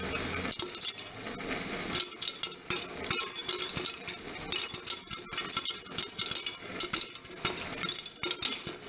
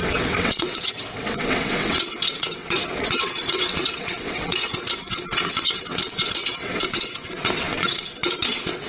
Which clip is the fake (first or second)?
second